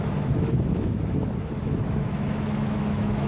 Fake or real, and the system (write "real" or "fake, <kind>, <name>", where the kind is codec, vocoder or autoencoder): fake, autoencoder, DAC-VAE